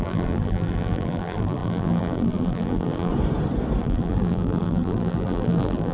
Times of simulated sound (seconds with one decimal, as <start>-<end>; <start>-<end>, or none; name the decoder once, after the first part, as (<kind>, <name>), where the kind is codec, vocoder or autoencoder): 0.0-3.1 (vocoder, BigVGAN v2); 3.8-5.9